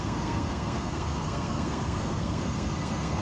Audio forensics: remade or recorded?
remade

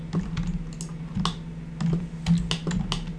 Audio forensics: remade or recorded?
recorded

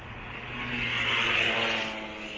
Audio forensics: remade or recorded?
recorded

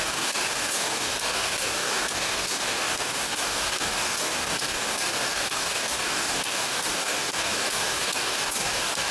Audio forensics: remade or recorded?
remade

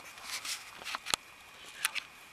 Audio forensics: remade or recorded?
recorded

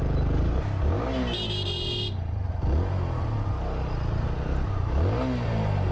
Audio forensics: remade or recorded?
recorded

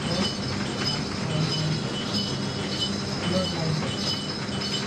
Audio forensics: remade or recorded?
recorded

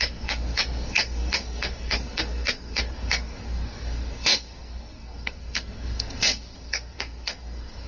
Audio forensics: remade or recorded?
remade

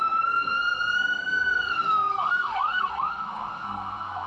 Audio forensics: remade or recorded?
remade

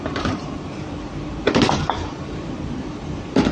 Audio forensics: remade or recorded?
remade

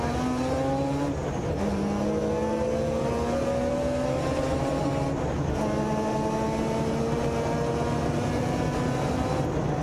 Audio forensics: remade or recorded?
recorded